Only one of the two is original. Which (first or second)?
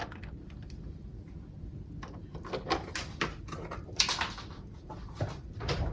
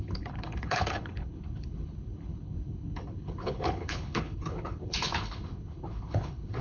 first